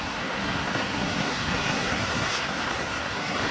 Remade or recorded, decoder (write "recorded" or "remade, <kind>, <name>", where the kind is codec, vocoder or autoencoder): remade, codec, SNAC